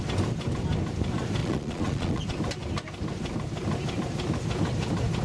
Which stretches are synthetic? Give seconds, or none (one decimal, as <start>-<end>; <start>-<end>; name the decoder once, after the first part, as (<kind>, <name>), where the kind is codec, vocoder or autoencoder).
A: 1.4-2.2 (vocoder, Vocos)